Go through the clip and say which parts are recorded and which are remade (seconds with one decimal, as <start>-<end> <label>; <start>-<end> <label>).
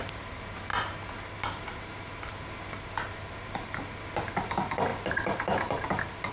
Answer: 0.0-6.3 recorded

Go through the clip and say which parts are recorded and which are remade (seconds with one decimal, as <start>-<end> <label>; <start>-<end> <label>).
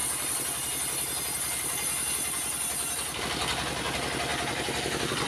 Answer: 0.0-5.3 recorded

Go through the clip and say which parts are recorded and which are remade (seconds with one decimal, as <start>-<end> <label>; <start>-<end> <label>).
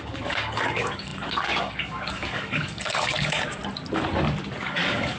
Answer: 0.0-3.6 remade; 3.6-4.6 recorded; 4.6-5.2 remade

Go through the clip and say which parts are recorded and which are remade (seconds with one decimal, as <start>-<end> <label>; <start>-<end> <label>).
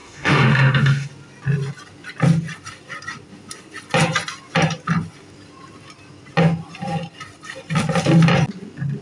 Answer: 0.0-1.1 remade; 1.1-9.0 recorded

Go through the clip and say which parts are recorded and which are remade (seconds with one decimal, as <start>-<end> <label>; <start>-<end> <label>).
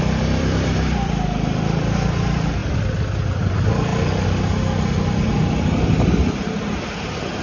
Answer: 0.0-2.6 remade; 2.6-3.3 recorded; 3.3-3.9 remade; 3.9-4.9 recorded; 4.9-7.4 remade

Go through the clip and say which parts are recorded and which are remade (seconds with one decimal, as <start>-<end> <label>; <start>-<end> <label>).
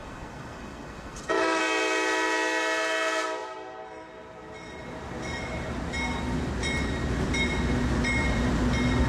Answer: 0.0-1.6 remade; 1.6-9.1 recorded